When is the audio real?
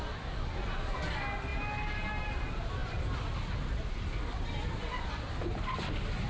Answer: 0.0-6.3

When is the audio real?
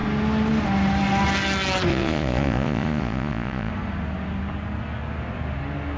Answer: 0.0-1.9; 3.7-6.0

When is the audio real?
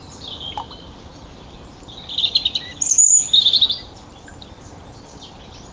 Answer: 0.0-5.7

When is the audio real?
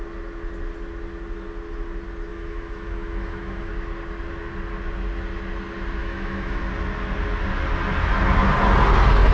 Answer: 0.0-2.3; 3.7-6.0; 6.6-9.3